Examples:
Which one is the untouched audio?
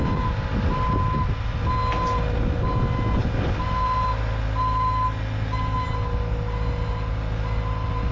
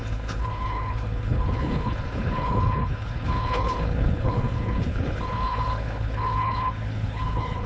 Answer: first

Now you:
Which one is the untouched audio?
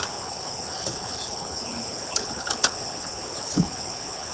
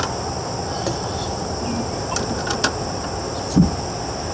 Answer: second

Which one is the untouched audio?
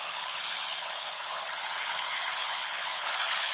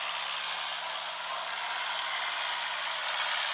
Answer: second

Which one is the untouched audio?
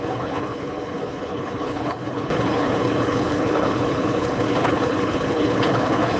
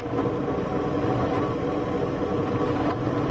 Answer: second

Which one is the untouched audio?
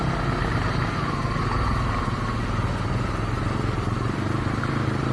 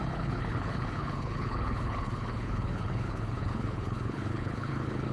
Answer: first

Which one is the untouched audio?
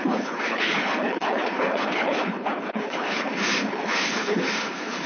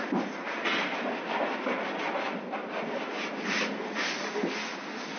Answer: second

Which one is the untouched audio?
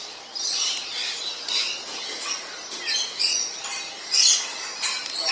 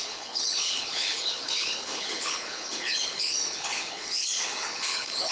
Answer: first